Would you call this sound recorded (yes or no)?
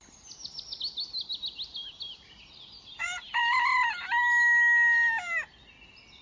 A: yes